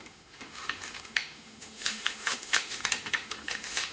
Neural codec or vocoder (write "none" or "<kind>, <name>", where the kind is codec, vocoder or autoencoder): autoencoder, DAC-VAE